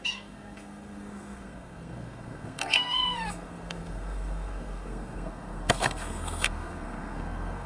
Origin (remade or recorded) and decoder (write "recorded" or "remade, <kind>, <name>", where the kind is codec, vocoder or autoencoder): remade, codec, SNAC